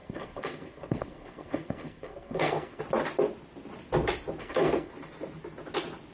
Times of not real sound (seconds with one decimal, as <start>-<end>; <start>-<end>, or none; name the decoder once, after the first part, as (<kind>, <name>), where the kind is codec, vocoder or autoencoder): 0.0-2.8 (codec, SNAC); 4.4-4.9

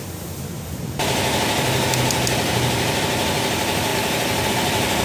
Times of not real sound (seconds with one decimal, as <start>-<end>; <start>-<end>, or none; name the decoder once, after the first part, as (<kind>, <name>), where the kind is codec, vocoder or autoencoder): none

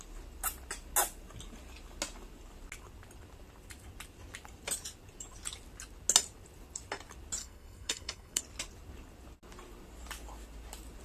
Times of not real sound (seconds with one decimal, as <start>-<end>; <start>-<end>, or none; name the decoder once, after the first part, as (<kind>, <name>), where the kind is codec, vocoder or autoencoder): 7.4-8.4 (codec, SNAC)

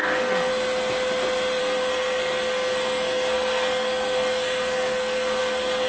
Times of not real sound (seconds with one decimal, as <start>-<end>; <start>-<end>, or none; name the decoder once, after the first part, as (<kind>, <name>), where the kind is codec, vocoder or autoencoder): 0.0-0.5 (codec, SNAC); 1.6-5.9